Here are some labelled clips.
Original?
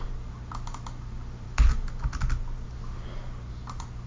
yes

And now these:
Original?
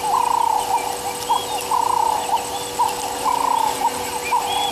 yes